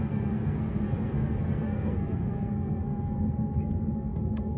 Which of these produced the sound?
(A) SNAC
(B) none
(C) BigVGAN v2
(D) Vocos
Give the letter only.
A